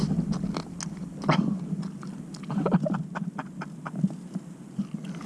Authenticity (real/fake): real